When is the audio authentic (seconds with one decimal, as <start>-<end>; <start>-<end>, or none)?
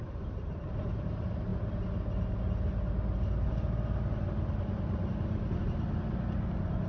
0.0-6.9